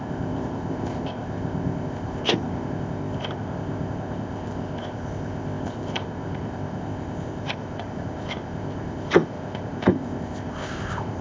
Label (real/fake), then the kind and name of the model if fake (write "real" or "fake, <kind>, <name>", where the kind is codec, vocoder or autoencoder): fake, codec, ZipCodec